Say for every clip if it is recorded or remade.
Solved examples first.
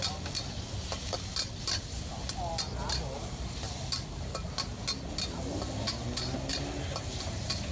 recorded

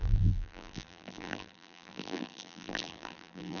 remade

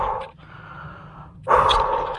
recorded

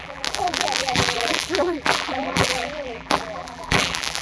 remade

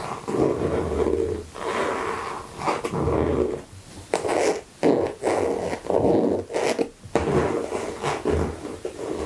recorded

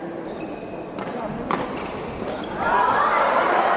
remade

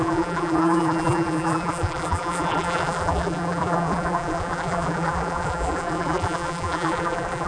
remade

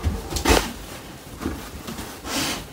recorded